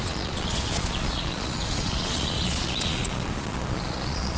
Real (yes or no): no